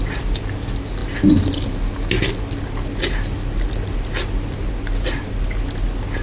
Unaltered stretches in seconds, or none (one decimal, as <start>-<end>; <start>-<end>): 0.0-6.2